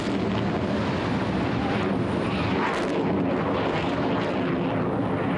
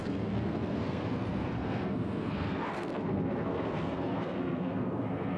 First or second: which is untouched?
first